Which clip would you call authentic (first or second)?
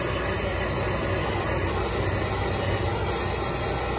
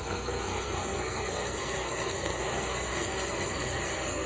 first